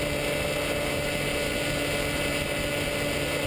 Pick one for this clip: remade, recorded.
recorded